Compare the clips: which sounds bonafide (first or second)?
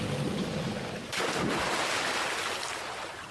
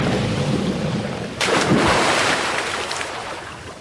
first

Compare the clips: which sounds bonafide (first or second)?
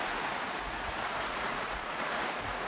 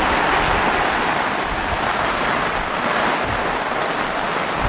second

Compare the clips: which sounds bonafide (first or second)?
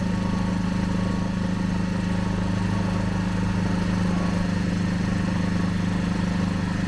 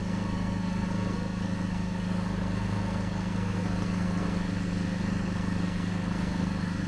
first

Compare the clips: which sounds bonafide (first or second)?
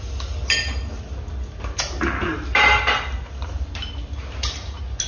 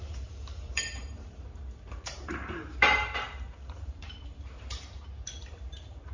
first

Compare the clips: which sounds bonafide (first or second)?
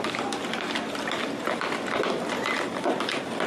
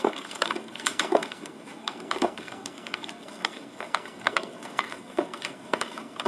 first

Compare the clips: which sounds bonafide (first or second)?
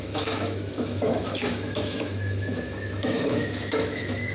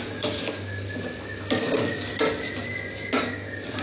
second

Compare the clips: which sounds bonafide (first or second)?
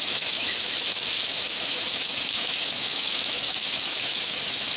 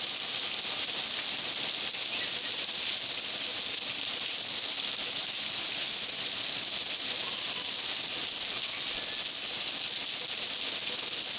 second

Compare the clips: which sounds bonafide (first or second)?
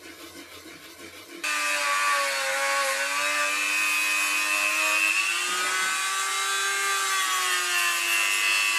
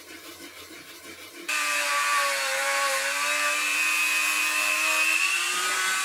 first